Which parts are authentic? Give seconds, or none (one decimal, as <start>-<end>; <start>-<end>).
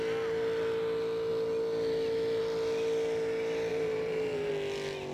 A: 0.0-3.7; 4.5-5.1